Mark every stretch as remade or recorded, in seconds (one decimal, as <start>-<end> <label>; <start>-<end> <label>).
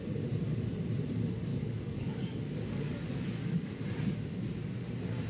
0.0-1.5 recorded; 1.5-3.7 remade; 3.7-5.3 recorded